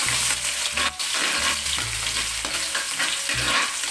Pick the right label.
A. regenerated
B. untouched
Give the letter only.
B